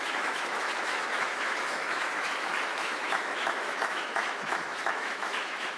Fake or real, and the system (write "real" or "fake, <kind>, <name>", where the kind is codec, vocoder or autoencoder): fake, autoencoder, DAC-VAE